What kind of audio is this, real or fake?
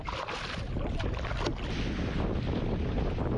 real